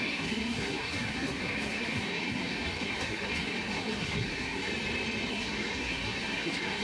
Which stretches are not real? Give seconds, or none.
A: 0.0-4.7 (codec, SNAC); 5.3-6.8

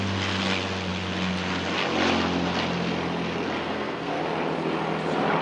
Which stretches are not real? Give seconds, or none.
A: 3.6-4.2 (codec, SNAC)

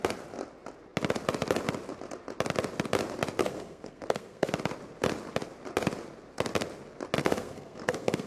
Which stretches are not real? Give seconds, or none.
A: 3.4-4.5 (codec, SNAC); 7.2-8.3